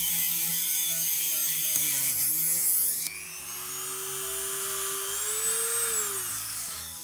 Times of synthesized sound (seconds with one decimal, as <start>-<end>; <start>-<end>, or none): 0.0-2.1; 6.3-7.0